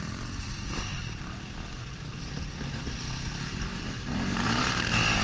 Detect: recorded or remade recorded